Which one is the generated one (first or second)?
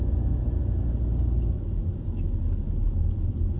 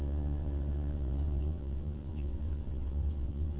second